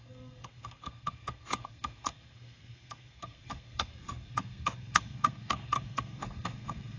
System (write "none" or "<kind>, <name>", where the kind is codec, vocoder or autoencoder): codec, SNAC